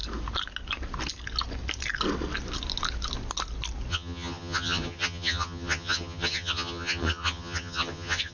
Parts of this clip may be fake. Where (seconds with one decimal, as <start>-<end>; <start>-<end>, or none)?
3.9-8.3